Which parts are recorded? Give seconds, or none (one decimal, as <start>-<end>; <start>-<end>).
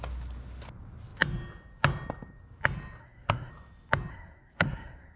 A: 0.0-3.0; 3.5-4.1